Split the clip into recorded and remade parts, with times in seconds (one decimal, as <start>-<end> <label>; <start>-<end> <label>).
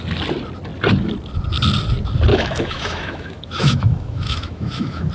0.0-2.3 recorded; 2.3-5.1 remade